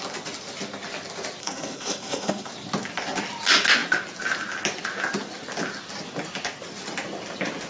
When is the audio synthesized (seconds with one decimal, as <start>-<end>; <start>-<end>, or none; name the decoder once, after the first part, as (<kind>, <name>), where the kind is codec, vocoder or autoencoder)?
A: 1.4-2.5 (codec, SNAC)